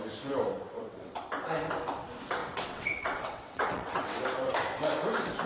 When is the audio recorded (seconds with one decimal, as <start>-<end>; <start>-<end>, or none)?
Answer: 0.0-0.7; 1.2-2.4; 4.2-5.5